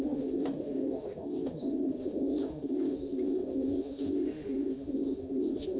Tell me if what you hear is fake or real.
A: fake